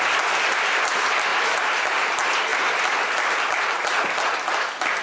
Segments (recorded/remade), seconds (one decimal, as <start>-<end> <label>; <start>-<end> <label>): 0.0-1.3 recorded; 1.3-1.8 remade; 1.8-5.0 recorded